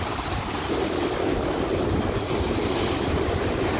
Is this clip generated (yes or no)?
no